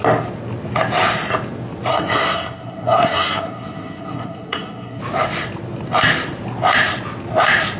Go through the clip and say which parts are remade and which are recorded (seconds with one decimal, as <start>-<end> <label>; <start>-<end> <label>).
0.0-1.9 recorded; 1.9-5.0 remade; 5.0-7.8 recorded